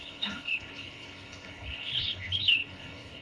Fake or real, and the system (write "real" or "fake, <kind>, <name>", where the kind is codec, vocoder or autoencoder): fake, codec, HILCodec